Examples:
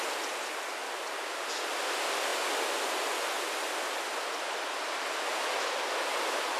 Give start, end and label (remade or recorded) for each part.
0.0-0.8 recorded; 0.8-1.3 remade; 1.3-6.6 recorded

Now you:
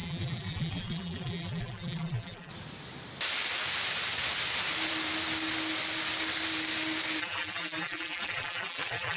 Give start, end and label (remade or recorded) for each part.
0.0-2.5 remade; 2.5-7.2 recorded; 7.2-9.2 remade

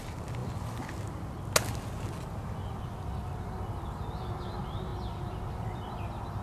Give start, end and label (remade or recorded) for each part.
0.0-6.4 recorded

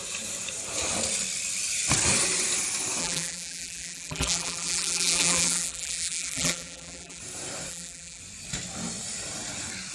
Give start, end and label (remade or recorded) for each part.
0.0-3.0 recorded; 3.0-7.2 remade; 7.2-7.7 recorded; 7.7-8.2 remade; 8.2-9.9 recorded

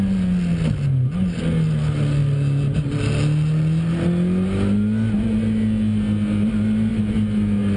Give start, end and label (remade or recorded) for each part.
0.0-7.8 recorded

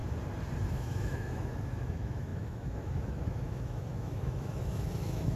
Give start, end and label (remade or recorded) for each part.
0.0-0.7 recorded; 0.7-5.4 remade

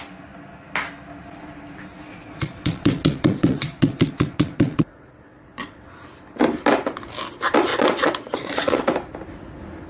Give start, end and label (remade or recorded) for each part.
0.0-2.1 recorded; 2.1-5.8 remade; 5.8-7.7 recorded; 7.7-8.8 remade; 8.8-9.9 recorded